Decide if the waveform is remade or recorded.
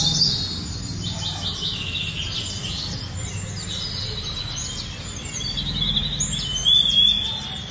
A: recorded